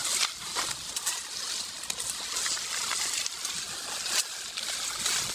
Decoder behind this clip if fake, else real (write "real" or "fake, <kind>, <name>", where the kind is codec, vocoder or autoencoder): real